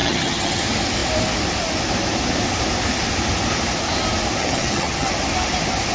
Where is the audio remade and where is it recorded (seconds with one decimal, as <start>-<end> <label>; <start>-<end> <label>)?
0.0-0.6 remade; 0.6-4.4 recorded; 4.4-5.1 remade; 5.1-5.9 recorded